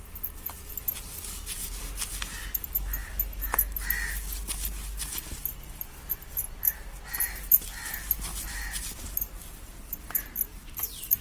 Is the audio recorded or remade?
recorded